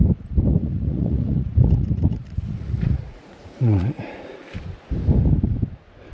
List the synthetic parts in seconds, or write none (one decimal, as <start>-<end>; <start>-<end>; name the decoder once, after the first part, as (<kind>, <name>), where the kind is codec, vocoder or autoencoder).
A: 0.5-4.2 (vocoder, Vocos)